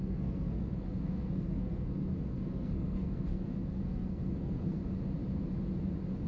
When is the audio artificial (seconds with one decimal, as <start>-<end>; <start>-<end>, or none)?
0.0-4.8